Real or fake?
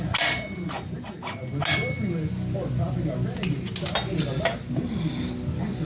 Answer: real